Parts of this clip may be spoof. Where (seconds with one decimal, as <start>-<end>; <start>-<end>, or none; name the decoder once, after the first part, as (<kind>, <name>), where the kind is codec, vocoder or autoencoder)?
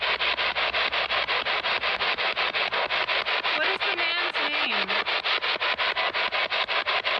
1.9-2.4 (autoencoder, DAC-VAE)